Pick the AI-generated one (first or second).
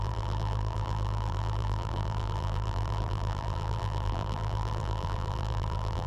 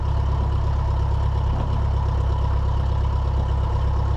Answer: first